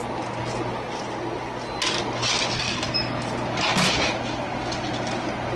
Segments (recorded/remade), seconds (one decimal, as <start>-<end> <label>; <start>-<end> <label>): 0.0-5.6 recorded